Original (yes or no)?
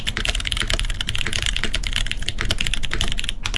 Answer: yes